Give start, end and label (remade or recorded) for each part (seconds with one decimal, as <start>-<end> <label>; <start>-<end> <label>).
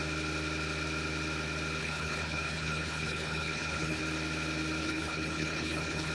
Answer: 0.0-1.8 recorded; 1.8-4.0 remade; 4.0-4.8 recorded; 4.8-6.1 remade